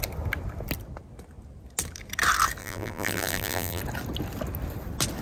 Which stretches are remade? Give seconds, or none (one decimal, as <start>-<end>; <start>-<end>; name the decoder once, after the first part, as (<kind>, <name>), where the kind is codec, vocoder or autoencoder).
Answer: 2.6-3.8 (vocoder, BigVGAN v2)